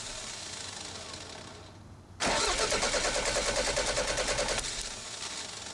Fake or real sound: real